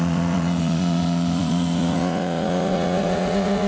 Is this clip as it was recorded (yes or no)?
no